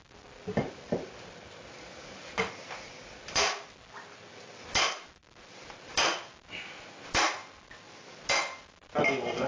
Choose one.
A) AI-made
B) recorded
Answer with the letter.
B